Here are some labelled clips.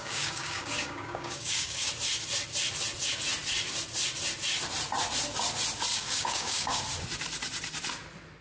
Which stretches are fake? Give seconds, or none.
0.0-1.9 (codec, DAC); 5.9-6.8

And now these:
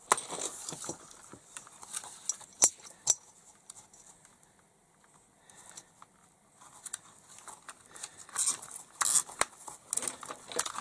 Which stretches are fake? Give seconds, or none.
none

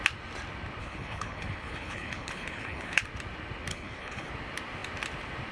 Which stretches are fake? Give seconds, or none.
0.8-3.0 (codec, HILCodec); 3.7-4.3